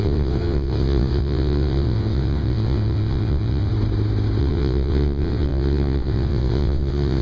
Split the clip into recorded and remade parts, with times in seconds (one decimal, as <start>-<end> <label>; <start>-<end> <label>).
0.0-3.7 remade; 3.7-4.4 recorded; 4.4-7.2 remade